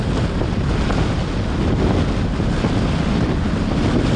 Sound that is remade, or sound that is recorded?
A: recorded